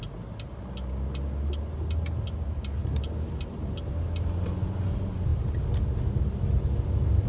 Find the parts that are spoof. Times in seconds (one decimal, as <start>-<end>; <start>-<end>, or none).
none